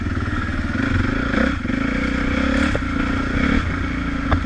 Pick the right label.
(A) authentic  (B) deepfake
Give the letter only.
A